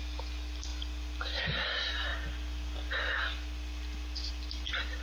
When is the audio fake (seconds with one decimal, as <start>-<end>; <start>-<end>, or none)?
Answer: none